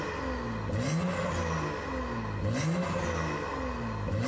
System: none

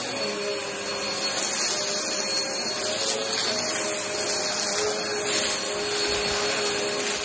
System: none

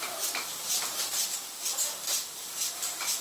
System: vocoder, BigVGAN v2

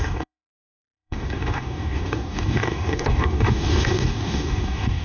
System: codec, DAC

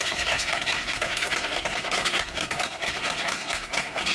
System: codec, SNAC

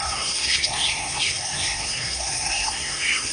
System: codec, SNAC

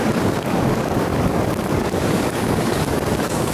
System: codec, DAC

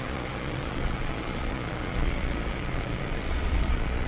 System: vocoder, Vocos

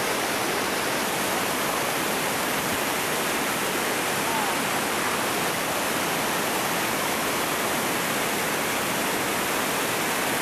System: none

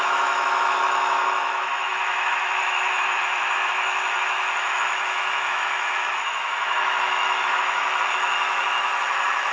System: autoencoder, DAC-VAE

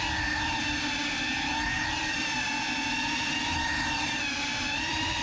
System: vocoder, BigVGAN v2